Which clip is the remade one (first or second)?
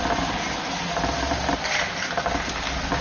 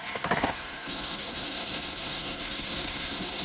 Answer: second